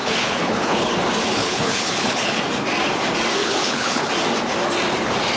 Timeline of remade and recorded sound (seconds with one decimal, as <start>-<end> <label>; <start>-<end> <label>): 0.0-0.9 remade; 0.9-1.4 recorded; 1.4-2.4 remade; 2.4-3.4 recorded; 3.4-4.1 remade; 4.1-5.4 recorded